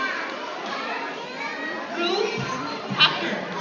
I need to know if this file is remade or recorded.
recorded